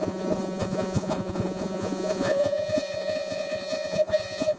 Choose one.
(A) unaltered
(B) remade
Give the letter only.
B